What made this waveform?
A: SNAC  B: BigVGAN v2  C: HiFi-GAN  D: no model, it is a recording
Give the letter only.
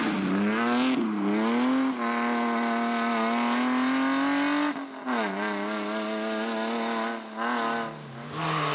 D